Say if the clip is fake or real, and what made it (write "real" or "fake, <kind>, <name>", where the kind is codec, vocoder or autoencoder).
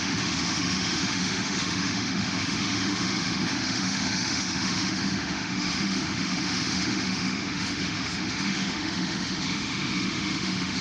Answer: fake, autoencoder, DAC-VAE